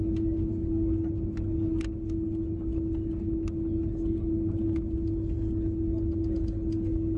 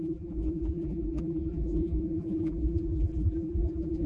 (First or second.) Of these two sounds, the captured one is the first